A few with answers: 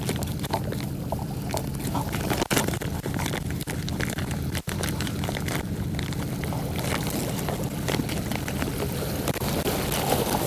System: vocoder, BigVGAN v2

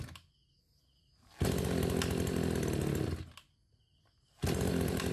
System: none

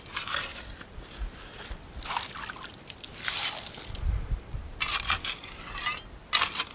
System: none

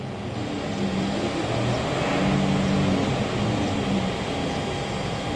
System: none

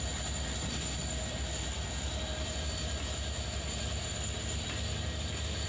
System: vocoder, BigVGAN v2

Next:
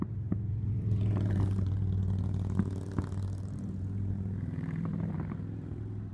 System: vocoder, BigVGAN v2